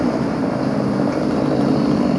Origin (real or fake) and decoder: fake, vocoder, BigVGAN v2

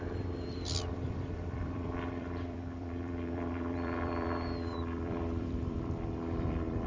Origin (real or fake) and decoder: fake, vocoder, BigVGAN v2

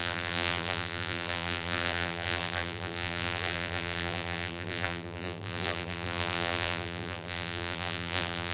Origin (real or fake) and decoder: fake, vocoder, BigVGAN v2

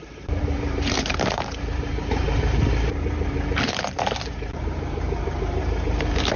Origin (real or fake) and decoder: fake, vocoder, BigVGAN v2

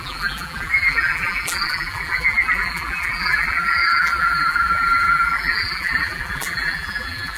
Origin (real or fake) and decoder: fake, vocoder, BigVGAN v2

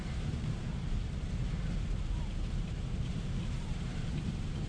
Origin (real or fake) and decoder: fake, vocoder, BigVGAN v2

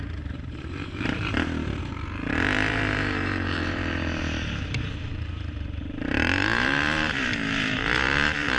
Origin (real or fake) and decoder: fake, vocoder, BigVGAN v2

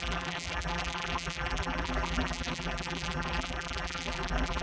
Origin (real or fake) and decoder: fake, vocoder, BigVGAN v2